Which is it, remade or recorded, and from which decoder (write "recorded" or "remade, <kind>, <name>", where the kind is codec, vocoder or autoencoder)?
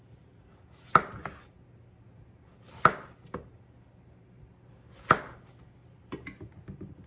recorded